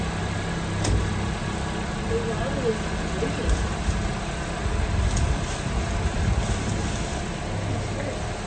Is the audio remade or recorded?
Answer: recorded